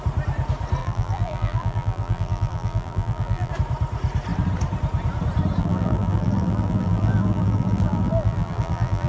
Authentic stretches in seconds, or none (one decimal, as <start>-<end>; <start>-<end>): 0.0-0.8; 3.5-5.6